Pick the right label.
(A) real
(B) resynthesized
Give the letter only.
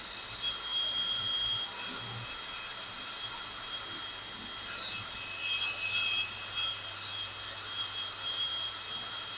A